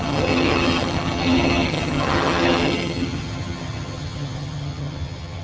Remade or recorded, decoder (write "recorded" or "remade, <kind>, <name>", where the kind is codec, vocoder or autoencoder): remade, vocoder, HiFi-GAN